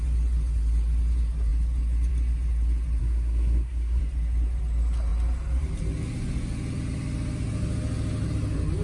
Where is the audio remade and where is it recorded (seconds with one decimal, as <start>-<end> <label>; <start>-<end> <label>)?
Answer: 0.0-3.0 recorded; 3.0-4.0 remade; 4.0-8.8 recorded